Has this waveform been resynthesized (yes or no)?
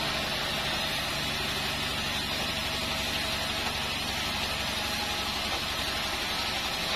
no